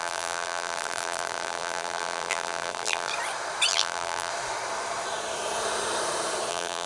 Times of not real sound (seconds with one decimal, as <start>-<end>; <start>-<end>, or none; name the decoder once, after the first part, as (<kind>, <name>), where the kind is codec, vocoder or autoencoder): 0.0-3.1 (vocoder, BigVGAN v2); 3.7-4.3; 6.5-6.9